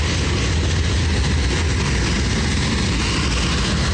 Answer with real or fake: real